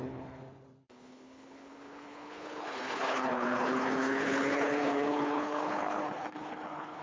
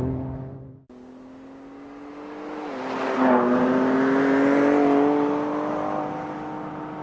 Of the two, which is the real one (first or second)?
second